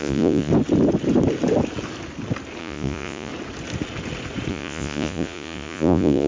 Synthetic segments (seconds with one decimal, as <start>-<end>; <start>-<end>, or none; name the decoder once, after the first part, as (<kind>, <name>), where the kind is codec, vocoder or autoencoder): 0.0-0.5 (vocoder, Vocos); 2.6-3.3; 4.5-6.3